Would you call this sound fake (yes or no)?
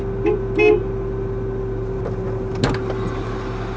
no